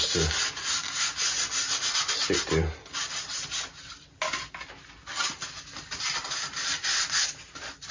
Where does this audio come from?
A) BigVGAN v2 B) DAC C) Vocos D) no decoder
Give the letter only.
D